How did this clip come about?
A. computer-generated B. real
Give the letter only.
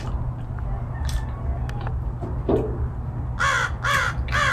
B